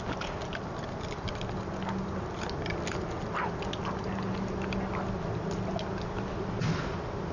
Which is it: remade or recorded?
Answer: recorded